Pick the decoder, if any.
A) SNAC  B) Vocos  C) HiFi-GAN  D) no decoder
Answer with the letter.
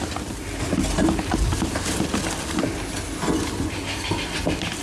D